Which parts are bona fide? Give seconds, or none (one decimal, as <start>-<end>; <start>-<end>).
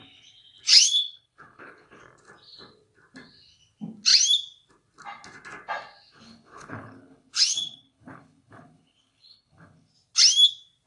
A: 0.0-0.7; 2.0-6.1; 9.9-10.9